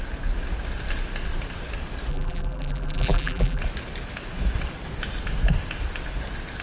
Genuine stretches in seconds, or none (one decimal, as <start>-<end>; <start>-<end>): 0.0-2.1; 3.6-6.6